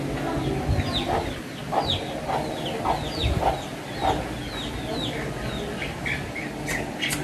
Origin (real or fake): real